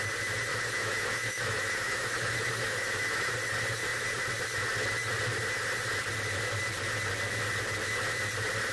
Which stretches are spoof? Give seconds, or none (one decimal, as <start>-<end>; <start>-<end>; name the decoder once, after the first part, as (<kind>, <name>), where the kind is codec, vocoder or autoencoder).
0.5-3.3 (autoencoder, DAC-VAE)